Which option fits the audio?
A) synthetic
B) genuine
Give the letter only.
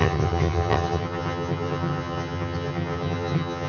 A